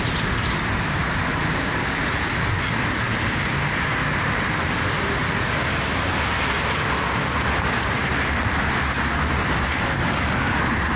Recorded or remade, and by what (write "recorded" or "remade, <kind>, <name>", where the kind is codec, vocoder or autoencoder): recorded